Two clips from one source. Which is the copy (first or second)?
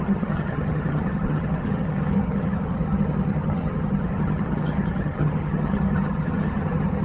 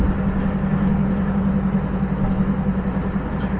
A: first